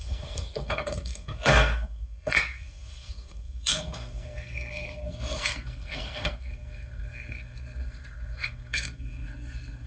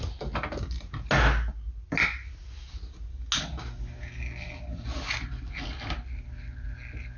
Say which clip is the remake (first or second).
first